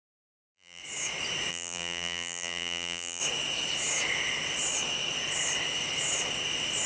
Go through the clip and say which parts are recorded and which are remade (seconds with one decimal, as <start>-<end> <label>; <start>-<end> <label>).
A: 0.0-0.8 remade; 0.8-1.5 recorded; 1.5-3.2 remade; 3.2-6.9 recorded